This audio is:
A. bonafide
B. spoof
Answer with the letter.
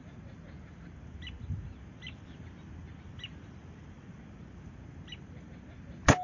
A